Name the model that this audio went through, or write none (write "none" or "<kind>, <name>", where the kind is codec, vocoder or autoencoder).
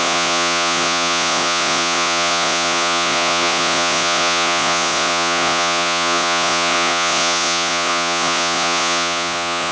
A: vocoder, Vocos